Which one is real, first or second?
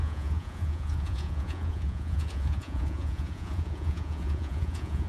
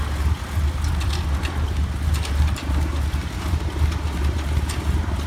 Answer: second